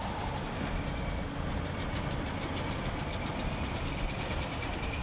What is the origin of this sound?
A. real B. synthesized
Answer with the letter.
A